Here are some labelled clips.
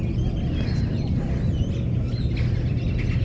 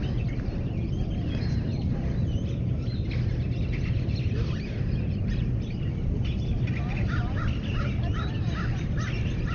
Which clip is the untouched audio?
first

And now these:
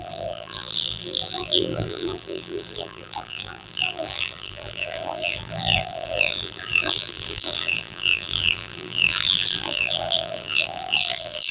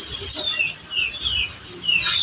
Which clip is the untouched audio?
second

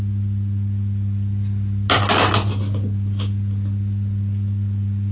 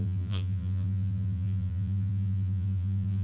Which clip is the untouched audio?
first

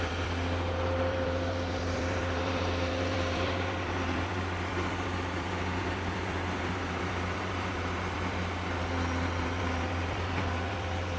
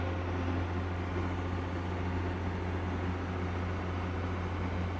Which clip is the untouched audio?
second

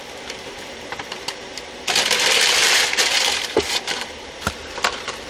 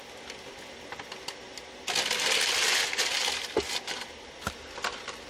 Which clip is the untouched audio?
second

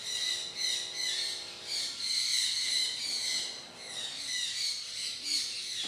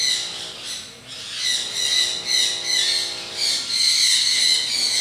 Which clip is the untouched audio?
second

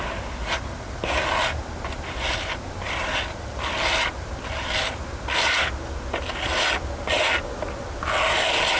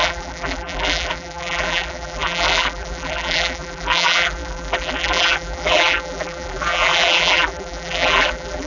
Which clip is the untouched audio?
first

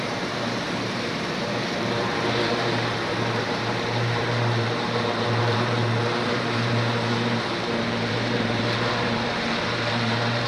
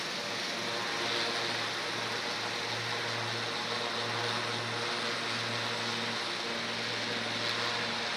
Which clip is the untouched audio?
second